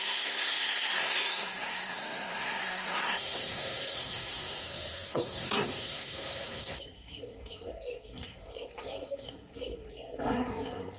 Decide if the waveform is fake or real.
fake